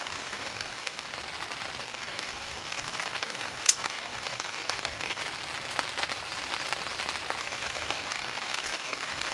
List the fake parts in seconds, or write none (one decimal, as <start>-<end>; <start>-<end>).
0.0-1.1; 1.8-5.2; 7.4-9.3